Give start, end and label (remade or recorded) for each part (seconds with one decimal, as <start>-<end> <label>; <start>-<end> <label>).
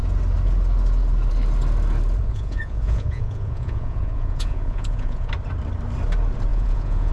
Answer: 0.0-2.2 recorded; 2.2-5.3 remade; 5.3-6.5 recorded; 6.5-7.1 remade